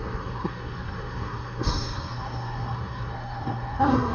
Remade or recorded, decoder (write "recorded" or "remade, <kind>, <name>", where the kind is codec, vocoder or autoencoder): remade, codec, SNAC